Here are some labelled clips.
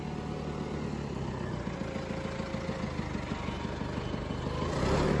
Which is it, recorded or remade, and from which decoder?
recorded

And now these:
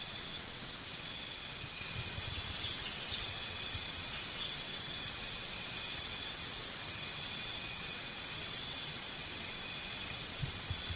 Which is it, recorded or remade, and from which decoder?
remade, vocoder, WaveNeXt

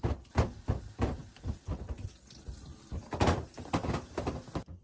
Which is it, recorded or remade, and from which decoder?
recorded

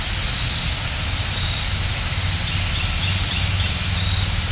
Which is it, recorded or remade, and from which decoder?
recorded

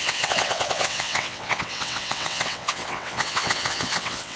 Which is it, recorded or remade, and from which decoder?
remade, vocoder, WaveNeXt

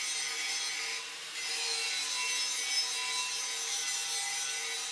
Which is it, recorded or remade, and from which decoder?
recorded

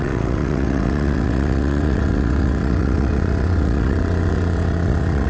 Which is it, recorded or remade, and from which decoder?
remade, vocoder, WaveNeXt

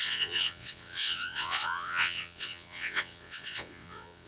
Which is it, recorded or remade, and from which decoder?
remade, vocoder, WaveNeXt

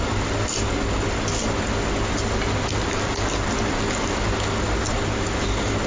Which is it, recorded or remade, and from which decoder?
recorded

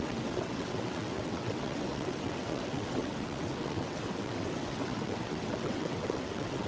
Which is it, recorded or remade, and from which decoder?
remade, vocoder, WaveNeXt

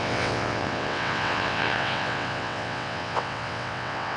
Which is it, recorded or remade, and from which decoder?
remade, vocoder, WaveNeXt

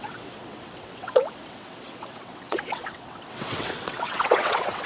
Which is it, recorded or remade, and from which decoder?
remade, vocoder, WaveNeXt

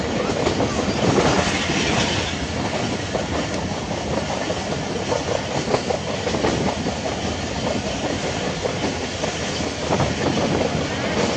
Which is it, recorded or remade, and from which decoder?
recorded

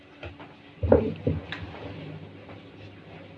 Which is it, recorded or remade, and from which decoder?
recorded